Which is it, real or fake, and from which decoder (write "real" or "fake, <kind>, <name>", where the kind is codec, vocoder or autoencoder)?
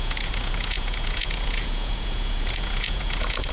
fake, vocoder, Vocos